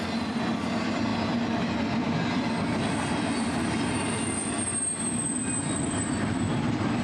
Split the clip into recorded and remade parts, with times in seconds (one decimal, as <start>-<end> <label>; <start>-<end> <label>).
0.0-7.0 recorded